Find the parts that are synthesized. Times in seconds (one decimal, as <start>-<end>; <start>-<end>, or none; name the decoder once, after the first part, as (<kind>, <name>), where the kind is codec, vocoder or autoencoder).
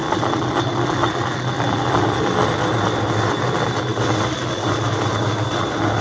none